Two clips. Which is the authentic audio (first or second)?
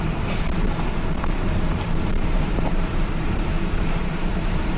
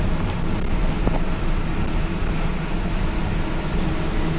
second